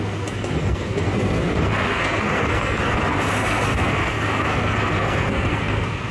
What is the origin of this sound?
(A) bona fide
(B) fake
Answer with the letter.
B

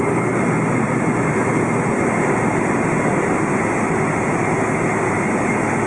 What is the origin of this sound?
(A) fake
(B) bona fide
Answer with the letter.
B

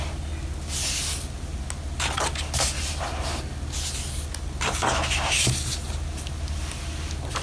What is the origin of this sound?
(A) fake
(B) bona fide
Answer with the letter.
B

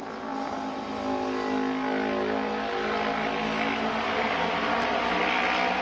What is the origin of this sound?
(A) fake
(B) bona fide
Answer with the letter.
B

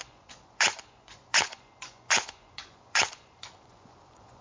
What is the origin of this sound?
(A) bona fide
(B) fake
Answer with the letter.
B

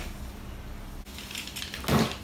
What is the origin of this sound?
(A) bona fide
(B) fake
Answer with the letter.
A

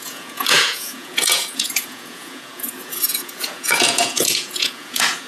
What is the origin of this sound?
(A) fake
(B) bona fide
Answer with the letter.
A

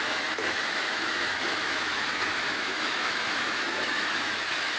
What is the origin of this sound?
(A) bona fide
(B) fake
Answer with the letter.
B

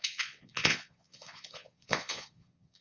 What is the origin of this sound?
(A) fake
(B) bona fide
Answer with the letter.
A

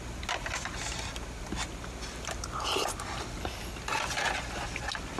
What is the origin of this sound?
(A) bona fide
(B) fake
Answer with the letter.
A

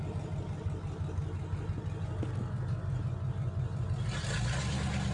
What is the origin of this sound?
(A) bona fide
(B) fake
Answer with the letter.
A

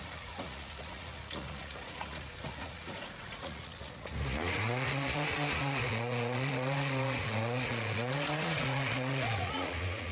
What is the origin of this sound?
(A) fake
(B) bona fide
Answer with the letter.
A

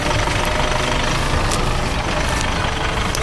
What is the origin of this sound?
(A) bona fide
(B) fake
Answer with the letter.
A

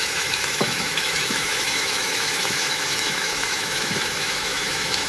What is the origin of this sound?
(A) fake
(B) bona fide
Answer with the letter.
A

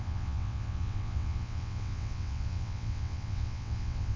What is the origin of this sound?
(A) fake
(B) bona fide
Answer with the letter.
A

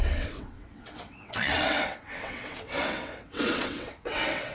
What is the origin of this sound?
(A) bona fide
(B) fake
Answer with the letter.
B